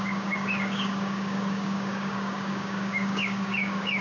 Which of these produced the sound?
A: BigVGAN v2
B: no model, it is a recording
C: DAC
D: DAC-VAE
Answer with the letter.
C